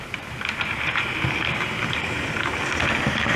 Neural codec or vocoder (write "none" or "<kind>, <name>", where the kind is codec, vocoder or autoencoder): vocoder, BigVGAN v2